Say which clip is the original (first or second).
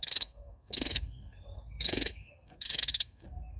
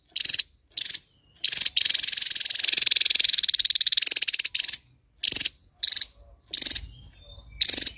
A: second